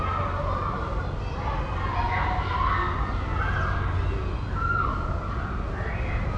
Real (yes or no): yes